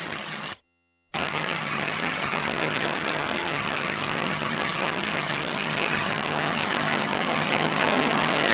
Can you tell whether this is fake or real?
fake